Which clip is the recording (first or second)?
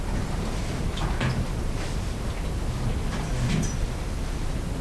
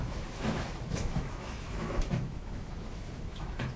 first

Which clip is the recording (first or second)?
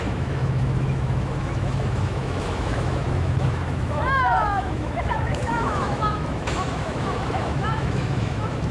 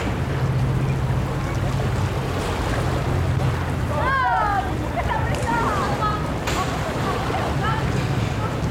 second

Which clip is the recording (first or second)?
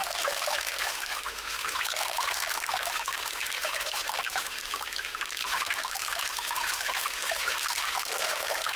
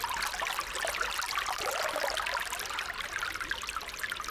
second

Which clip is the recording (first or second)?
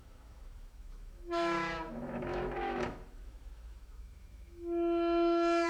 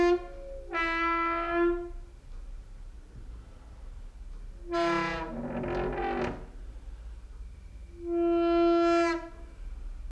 second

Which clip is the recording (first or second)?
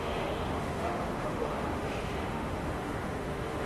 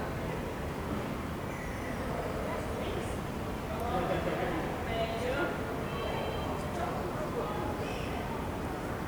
second